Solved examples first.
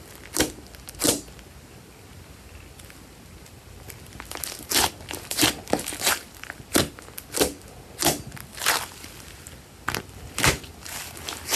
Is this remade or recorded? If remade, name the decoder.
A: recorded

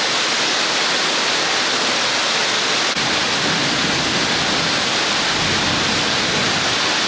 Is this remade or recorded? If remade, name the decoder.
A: recorded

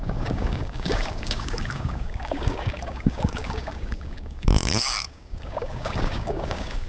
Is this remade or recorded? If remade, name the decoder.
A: remade, codec, DAC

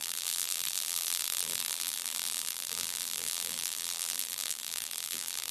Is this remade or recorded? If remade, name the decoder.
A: remade, vocoder, BigVGAN v2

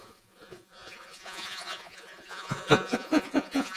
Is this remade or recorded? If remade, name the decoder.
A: remade, vocoder, Vocos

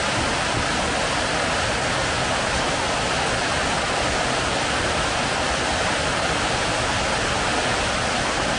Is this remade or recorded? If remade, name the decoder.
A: recorded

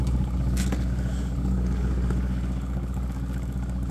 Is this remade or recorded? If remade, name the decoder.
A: remade, codec, DAC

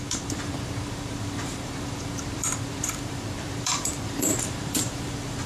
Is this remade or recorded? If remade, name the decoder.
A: remade, vocoder, BigVGAN v2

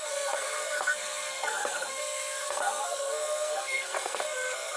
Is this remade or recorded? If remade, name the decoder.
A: remade, codec, SNAC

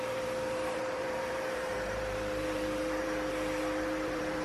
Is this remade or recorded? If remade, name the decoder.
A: remade, vocoder, BigVGAN v2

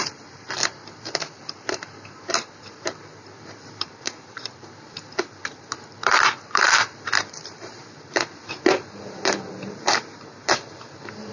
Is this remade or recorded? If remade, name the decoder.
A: remade, vocoder, BigVGAN v2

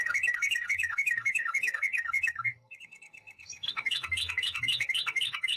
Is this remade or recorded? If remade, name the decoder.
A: remade, codec, SNAC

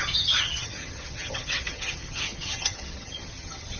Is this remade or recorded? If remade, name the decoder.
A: remade, vocoder, HiFi-GAN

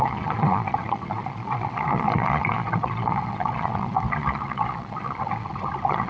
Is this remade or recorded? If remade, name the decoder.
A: remade, vocoder, Vocos